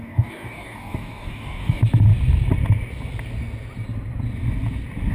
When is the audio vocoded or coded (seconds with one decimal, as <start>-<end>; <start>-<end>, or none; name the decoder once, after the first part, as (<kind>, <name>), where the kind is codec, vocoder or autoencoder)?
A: 0.0-1.8 (codec, DAC)